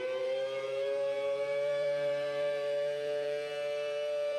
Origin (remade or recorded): remade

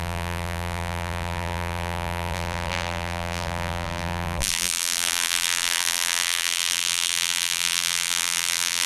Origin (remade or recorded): remade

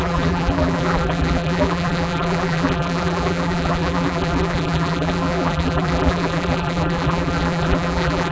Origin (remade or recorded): remade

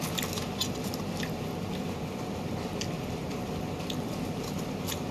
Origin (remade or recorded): remade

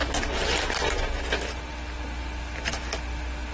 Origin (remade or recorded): recorded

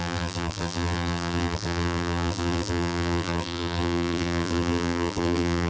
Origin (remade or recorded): remade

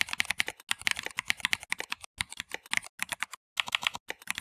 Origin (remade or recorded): recorded